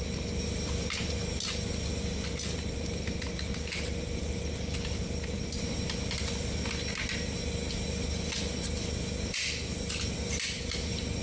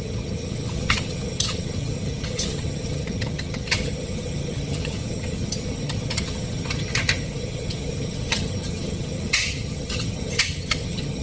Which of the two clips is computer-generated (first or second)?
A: second